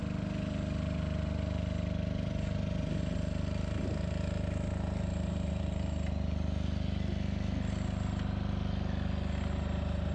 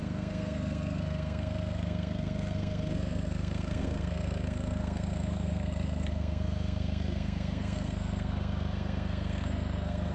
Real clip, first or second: first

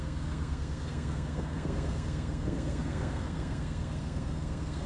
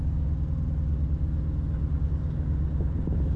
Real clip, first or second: second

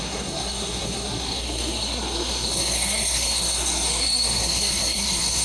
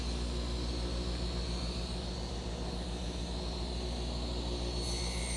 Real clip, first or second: second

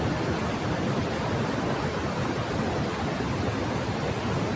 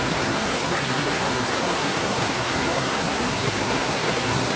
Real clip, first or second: first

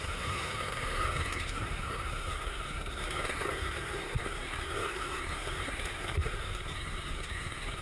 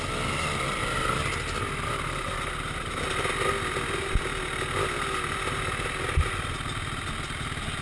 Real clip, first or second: second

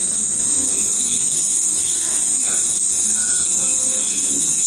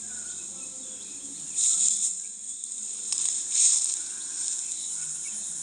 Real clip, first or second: second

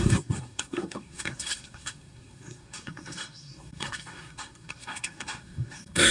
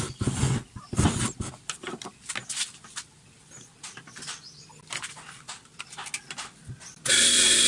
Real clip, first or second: second